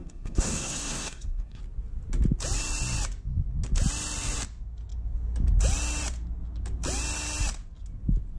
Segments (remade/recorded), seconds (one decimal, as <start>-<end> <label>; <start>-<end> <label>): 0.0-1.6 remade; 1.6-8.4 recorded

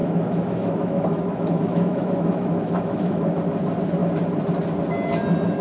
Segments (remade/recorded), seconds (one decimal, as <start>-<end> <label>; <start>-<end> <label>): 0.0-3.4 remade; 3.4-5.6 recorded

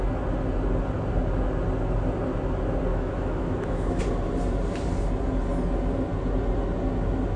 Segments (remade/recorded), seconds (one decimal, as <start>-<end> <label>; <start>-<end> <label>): 0.0-2.9 recorded; 2.9-4.0 remade; 4.0-7.4 recorded

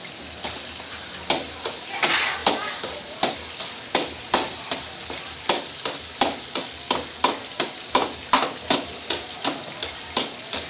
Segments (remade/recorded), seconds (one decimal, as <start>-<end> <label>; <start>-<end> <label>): 0.0-10.7 recorded